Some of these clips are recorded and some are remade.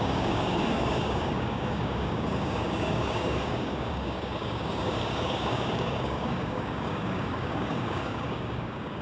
remade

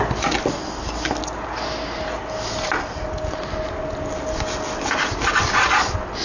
recorded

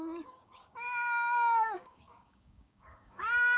remade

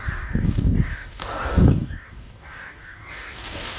remade